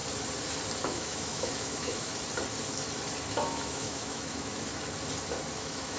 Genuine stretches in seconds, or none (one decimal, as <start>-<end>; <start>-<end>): 0.0-0.8; 2.1-3.3; 4.7-5.5